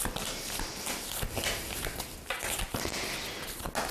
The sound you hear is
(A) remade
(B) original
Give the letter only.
B